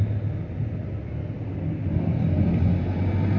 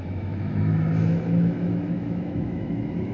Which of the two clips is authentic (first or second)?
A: first